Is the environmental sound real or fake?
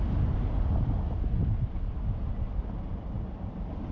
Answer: real